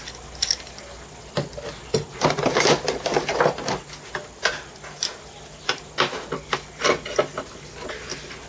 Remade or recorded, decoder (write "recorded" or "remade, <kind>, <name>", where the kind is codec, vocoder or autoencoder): recorded